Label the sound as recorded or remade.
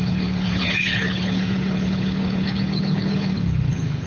remade